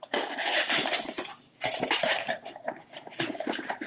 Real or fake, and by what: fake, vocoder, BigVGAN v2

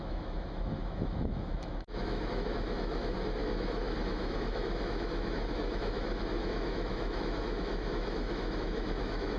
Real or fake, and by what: fake, autoencoder, DAC-VAE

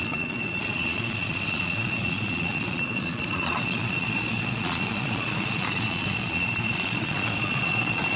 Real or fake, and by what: fake, vocoder, Vocos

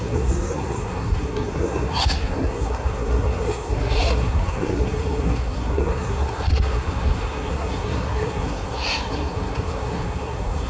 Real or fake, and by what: fake, codec, SNAC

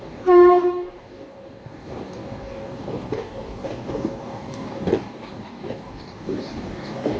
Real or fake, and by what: fake, codec, DAC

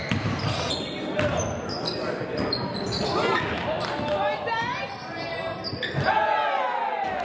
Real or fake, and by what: real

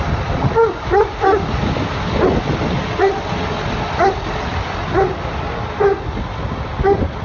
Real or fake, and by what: real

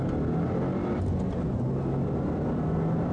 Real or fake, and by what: real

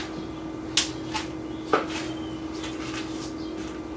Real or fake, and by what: real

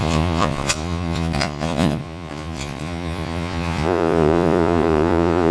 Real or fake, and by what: fake, vocoder, Vocos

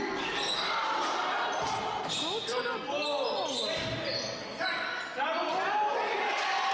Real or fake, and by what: real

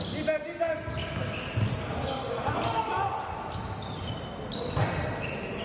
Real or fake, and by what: real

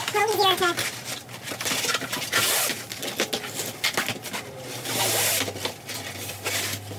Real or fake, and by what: real